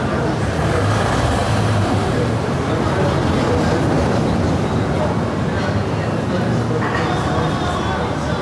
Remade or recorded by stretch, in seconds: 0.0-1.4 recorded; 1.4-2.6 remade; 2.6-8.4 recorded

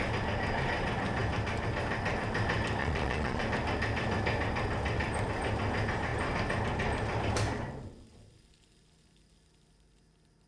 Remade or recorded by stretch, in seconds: 0.0-2.8 recorded; 2.8-3.4 remade; 3.4-10.5 recorded

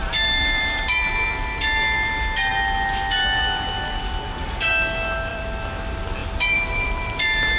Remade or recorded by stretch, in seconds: 0.0-2.1 remade; 2.1-5.3 recorded; 5.3-5.8 remade; 5.8-6.2 recorded; 6.2-7.6 remade